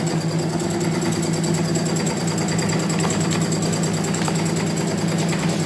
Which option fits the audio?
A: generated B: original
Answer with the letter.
B